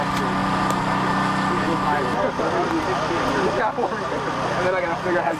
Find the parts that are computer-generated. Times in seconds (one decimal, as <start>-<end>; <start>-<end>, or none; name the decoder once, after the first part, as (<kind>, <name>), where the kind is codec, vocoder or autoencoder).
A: none